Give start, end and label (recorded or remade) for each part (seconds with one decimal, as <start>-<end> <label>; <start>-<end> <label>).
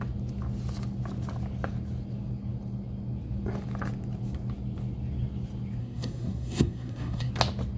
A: 0.0-5.8 recorded; 5.8-7.3 remade; 7.3-7.8 recorded